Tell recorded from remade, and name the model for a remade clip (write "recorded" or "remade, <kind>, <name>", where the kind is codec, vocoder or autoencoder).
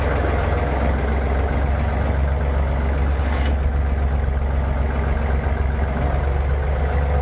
recorded